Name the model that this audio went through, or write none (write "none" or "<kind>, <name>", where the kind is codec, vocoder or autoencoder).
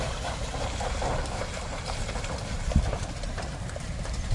vocoder, BigVGAN v2